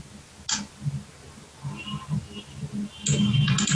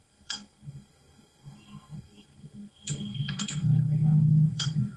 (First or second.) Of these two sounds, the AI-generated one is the second